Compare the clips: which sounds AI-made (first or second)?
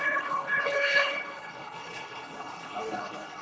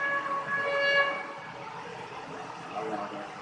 first